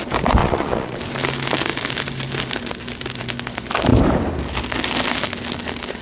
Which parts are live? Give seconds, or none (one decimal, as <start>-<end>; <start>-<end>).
0.0-0.4; 1.0-6.0